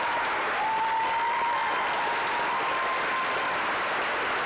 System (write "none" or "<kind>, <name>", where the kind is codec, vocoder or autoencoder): none